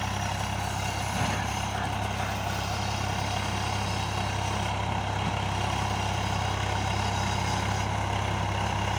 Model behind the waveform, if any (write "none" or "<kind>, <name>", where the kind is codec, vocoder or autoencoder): none